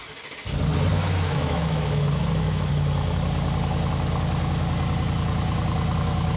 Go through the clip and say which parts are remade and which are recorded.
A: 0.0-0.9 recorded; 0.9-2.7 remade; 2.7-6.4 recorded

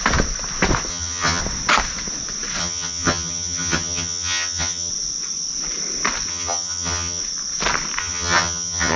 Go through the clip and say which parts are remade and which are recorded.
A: 0.0-0.9 recorded; 0.9-1.4 remade; 1.4-2.6 recorded; 2.6-4.9 remade; 4.9-6.3 recorded; 6.3-7.2 remade; 7.2-8.0 recorded; 8.0-9.0 remade

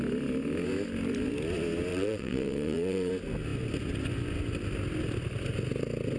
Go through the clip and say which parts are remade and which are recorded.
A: 0.0-1.9 recorded; 1.9-3.1 remade; 3.1-6.2 recorded

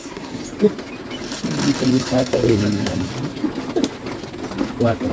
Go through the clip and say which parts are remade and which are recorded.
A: 0.0-0.4 remade; 0.4-1.9 recorded; 1.9-3.1 remade; 3.1-5.1 recorded

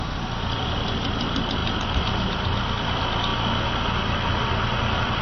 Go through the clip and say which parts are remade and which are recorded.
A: 0.0-3.3 remade; 3.3-4.2 recorded; 4.2-5.2 remade

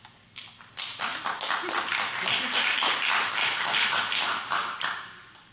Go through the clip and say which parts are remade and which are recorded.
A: 0.0-5.5 recorded

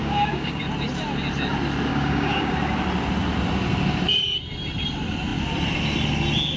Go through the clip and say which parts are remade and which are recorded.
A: 0.0-0.6 remade; 0.6-1.9 recorded; 1.9-2.5 remade; 2.5-6.6 recorded